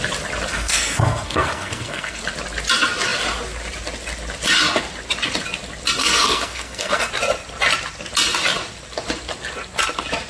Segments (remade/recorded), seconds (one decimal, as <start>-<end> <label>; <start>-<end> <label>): 0.0-0.5 recorded; 0.5-2.2 remade; 2.2-6.0 recorded; 6.0-7.1 remade; 7.1-10.3 recorded